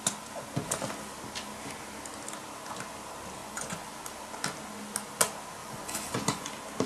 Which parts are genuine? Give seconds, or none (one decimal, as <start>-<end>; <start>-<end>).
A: 0.0-3.4; 3.9-5.6; 6.5-6.9